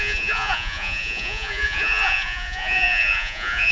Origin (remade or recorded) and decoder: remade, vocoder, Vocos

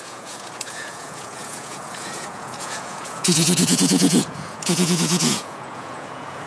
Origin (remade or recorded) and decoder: remade, vocoder, Vocos